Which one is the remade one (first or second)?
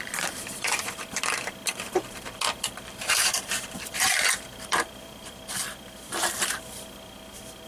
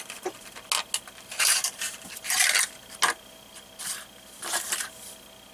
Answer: first